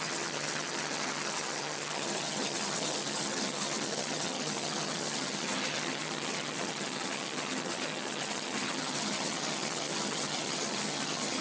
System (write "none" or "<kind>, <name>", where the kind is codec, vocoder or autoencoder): vocoder, HiFi-GAN